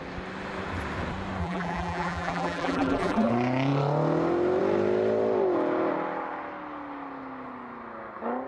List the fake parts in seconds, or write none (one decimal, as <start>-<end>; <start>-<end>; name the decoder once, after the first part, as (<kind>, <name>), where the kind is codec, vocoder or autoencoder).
1.4-3.3 (vocoder, BigVGAN v2)